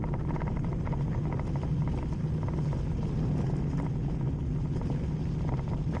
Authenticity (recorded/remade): recorded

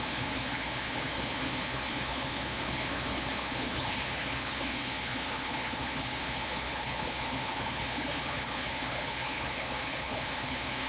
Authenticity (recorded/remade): remade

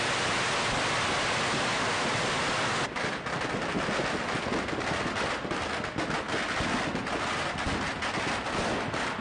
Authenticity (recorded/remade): recorded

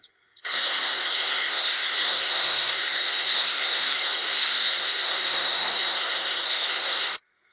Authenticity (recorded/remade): remade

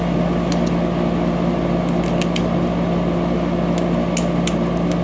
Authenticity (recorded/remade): recorded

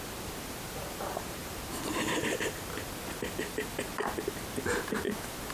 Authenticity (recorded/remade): recorded